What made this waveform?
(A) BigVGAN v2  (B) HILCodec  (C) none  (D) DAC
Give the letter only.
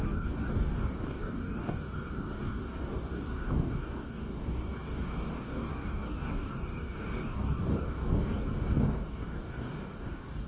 D